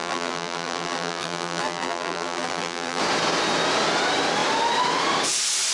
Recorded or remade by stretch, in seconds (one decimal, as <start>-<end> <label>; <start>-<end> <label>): 0.0-3.0 remade; 3.0-5.7 recorded